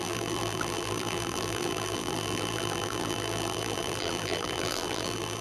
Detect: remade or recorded remade